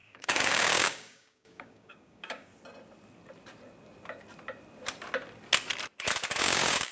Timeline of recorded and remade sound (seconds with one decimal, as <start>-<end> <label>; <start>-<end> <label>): 0.0-2.5 remade; 2.5-6.4 recorded; 6.4-6.9 remade